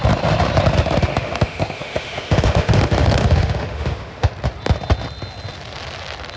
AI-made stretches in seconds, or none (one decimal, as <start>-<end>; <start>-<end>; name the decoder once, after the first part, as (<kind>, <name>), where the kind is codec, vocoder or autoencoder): 1.1-4.3 (autoencoder, DAC-VAE)